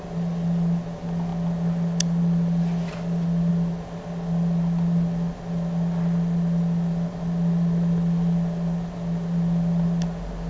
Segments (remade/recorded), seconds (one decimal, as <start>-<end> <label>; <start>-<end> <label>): 0.0-10.5 recorded